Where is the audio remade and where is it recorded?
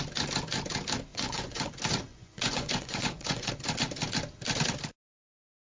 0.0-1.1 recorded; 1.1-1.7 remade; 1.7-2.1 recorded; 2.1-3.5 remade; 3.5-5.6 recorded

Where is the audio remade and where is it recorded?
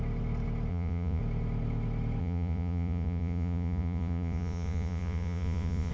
0.0-0.7 recorded; 0.7-1.2 remade; 1.2-2.2 recorded; 2.2-5.9 remade